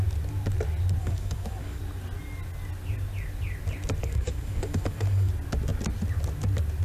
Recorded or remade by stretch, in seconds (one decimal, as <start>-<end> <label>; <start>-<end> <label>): 0.0-1.0 recorded; 1.0-1.8 remade; 1.8-4.0 recorded; 4.0-5.3 remade; 5.3-6.8 recorded